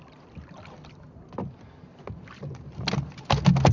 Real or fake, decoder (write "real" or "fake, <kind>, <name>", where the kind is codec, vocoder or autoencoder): real